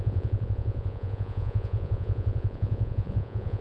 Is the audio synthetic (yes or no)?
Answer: yes